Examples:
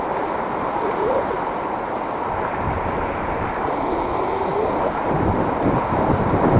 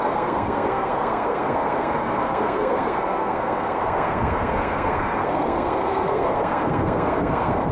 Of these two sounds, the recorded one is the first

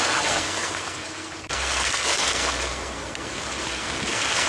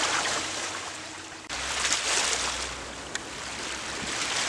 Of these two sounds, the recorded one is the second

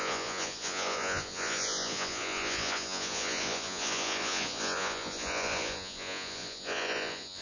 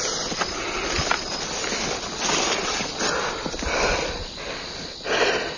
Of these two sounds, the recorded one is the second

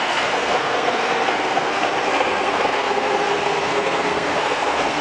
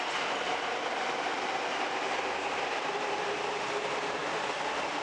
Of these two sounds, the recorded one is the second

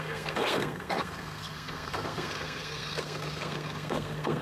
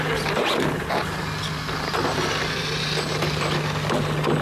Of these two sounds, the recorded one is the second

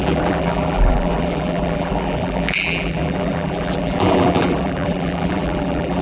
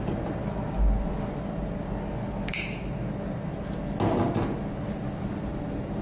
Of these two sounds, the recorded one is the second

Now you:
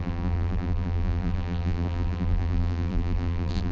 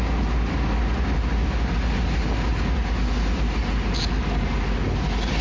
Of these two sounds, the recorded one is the second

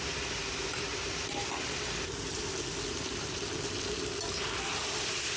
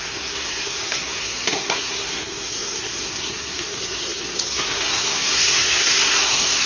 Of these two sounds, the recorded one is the first